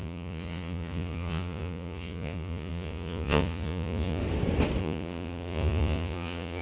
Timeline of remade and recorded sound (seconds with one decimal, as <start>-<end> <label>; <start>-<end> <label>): 0.0-4.2 remade; 4.2-4.8 recorded; 4.8-6.6 remade